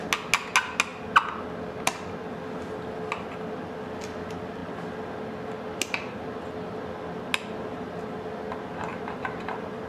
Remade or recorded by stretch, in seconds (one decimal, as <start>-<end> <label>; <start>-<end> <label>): 0.0-8.9 recorded; 8.9-9.9 remade